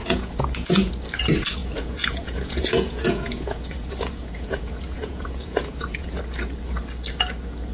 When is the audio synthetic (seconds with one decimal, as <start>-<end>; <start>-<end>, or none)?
0.0-0.9; 1.6-6.2